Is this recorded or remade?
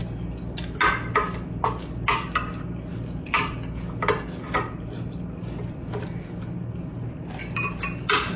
recorded